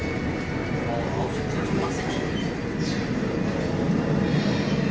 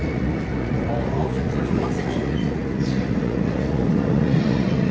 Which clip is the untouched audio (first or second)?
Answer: first